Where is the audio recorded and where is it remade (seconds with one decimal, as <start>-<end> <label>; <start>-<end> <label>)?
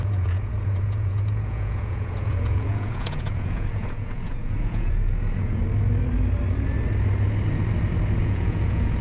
0.0-5.6 remade; 5.6-8.2 recorded; 8.2-9.0 remade